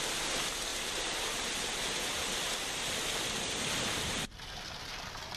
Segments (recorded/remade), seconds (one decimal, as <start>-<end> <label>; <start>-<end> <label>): 0.0-5.4 recorded